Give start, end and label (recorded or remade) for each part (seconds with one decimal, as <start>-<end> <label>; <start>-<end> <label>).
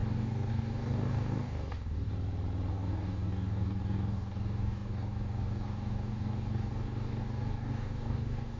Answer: 0.0-2.1 remade; 2.1-2.7 recorded; 2.7-8.6 remade